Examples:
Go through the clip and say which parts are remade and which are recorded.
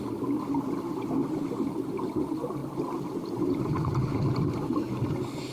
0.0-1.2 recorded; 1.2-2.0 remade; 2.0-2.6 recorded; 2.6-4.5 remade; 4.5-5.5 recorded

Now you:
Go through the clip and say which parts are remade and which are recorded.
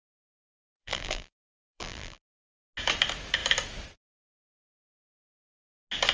0.0-0.5 recorded; 0.5-2.5 remade; 2.5-6.1 recorded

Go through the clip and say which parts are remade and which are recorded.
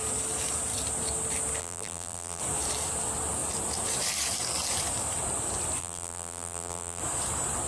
0.0-1.6 recorded; 1.6-2.4 remade; 2.4-5.8 recorded; 5.8-7.0 remade; 7.0-7.7 recorded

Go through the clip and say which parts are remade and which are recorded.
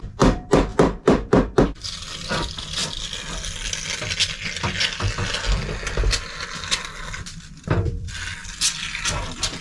0.0-2.8 remade; 2.8-6.0 recorded; 6.0-9.6 remade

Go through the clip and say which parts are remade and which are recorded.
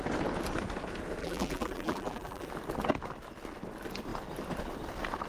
0.0-1.2 recorded; 1.2-2.5 remade; 2.5-5.3 recorded